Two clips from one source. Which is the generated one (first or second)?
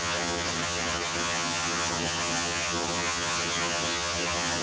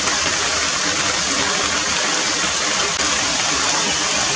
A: first